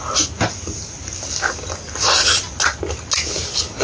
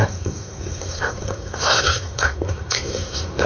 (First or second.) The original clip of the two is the first